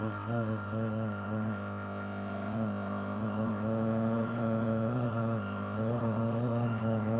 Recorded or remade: remade